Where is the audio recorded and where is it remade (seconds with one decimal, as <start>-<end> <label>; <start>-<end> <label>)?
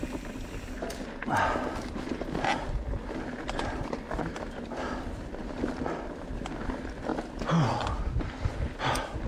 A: 0.0-9.3 recorded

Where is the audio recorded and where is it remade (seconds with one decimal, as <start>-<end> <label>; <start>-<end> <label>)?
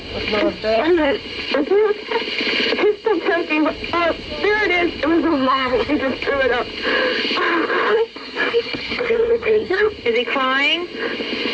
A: 0.0-0.6 recorded; 0.6-1.2 remade; 1.2-5.3 recorded; 5.3-5.9 remade; 5.9-7.9 recorded; 7.9-9.9 remade; 9.9-11.5 recorded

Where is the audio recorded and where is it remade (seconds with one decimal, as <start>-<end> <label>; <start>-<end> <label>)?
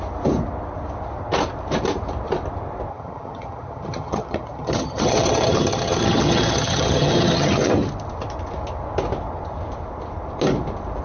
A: 0.0-2.9 recorded; 2.9-7.7 remade; 7.7-11.0 recorded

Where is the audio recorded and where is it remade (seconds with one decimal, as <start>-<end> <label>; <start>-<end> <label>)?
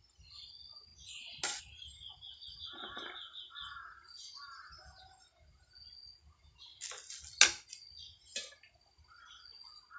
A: 0.0-10.0 recorded